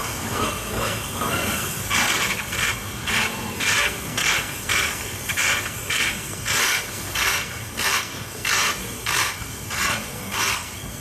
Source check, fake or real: fake